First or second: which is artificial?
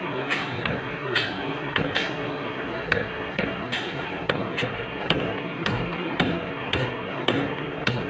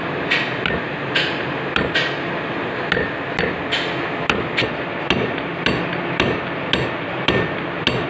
first